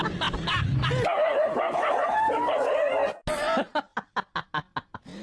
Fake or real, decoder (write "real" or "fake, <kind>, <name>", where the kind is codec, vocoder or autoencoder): real